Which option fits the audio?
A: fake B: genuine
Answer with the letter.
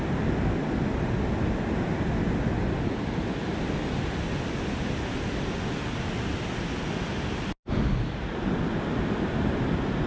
B